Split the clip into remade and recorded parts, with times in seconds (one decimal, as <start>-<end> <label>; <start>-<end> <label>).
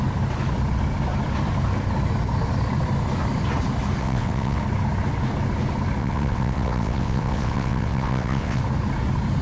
0.0-4.0 recorded; 4.0-4.6 remade; 4.6-6.0 recorded; 6.0-8.6 remade; 8.6-9.4 recorded